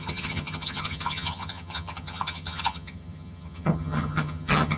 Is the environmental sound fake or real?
fake